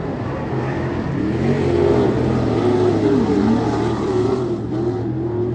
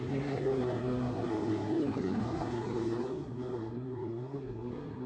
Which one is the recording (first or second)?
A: first